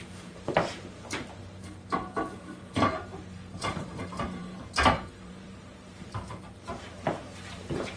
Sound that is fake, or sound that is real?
fake